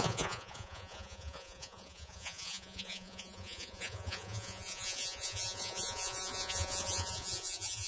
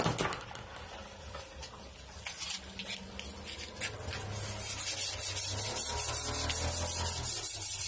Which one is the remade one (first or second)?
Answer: first